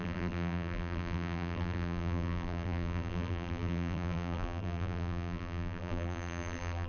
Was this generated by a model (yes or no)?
yes